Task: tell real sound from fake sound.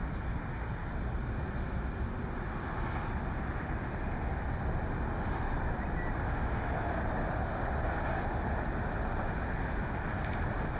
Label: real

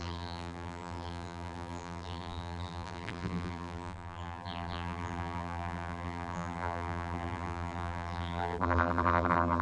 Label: fake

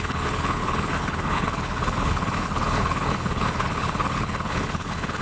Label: fake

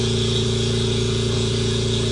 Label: fake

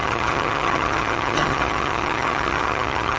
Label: fake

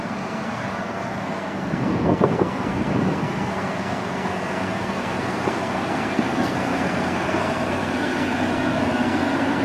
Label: fake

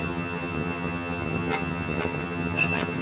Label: fake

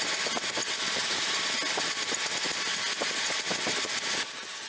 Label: real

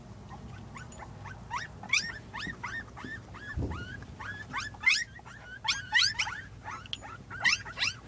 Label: real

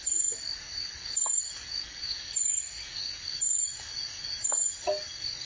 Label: fake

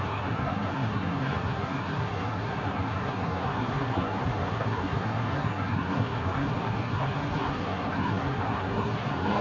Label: fake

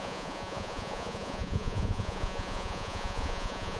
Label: fake